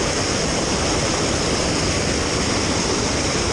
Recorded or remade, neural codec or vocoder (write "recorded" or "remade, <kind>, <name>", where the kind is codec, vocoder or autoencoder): recorded